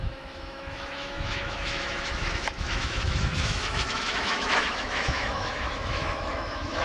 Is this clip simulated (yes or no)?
yes